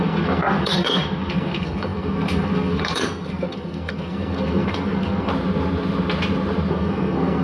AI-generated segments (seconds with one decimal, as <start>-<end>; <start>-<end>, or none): 0.0-5.3; 6.7-7.4